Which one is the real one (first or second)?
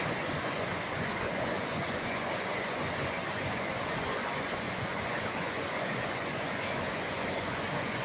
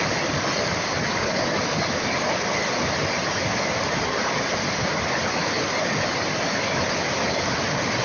second